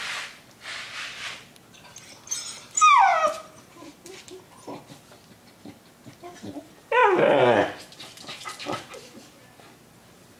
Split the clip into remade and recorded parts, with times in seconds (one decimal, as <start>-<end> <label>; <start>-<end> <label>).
0.0-3.1 recorded; 3.1-4.2 remade; 4.2-10.4 recorded